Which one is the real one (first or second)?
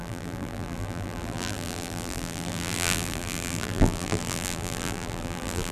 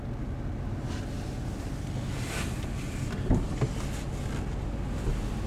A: second